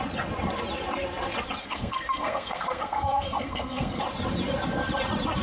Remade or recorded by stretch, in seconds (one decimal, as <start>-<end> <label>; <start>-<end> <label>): 0.0-1.6 recorded; 1.6-4.0 remade; 4.0-5.4 recorded